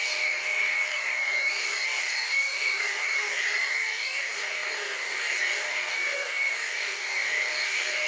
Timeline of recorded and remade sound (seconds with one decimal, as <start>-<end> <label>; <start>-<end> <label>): 0.0-8.1 remade